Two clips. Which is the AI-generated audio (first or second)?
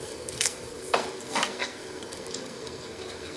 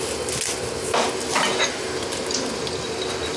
first